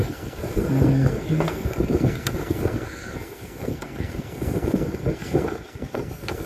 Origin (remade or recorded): remade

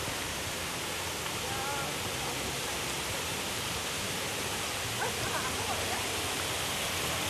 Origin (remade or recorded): recorded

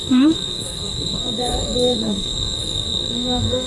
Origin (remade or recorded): remade